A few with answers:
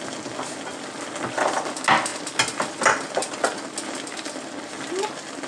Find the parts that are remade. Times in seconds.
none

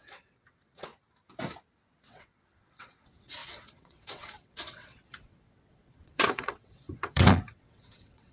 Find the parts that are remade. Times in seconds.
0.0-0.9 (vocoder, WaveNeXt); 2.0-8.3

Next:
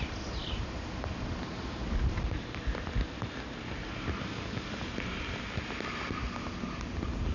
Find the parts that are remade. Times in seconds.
none

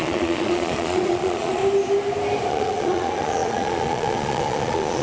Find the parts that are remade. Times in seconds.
0.0-1.6 (vocoder, Vocos); 2.5-5.0

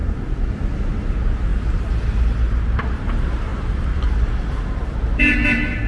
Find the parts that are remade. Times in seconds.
0.0-1.1 (vocoder, BigVGAN v2); 3.5-5.0

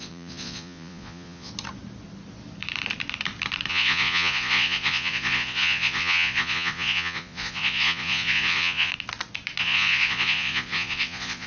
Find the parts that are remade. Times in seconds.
0.0-1.5 (vocoder, Vocos); 3.7-8.9; 9.6-11.5

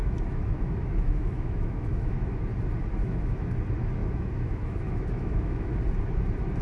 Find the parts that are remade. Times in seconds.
0.0-2.4 (autoencoder, DAC-VAE); 3.0-3.6; 4.0-5.8

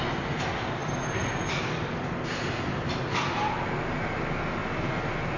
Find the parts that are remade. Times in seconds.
none